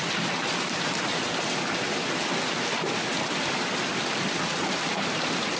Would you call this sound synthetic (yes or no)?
no